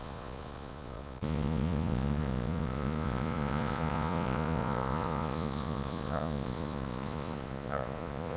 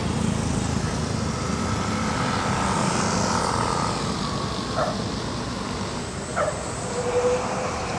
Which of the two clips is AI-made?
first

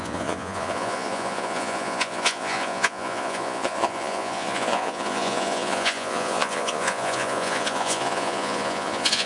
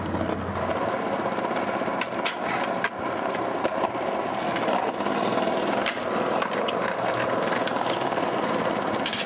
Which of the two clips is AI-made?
first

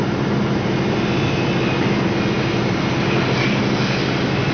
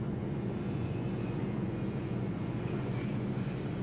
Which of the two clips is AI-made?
second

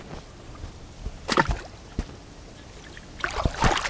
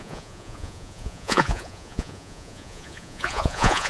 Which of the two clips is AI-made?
second